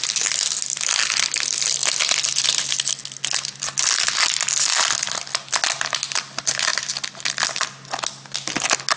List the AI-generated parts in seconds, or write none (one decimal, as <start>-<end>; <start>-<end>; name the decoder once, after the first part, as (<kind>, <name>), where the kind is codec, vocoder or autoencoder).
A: 6.7-7.2 (vocoder, BigVGAN v2)